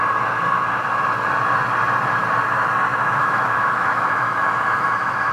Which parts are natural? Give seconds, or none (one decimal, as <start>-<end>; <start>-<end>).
0.0-2.9